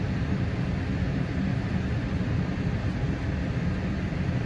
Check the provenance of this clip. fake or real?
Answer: real